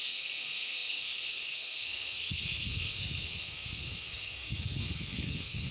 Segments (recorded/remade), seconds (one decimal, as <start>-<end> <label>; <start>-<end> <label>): 0.0-5.7 remade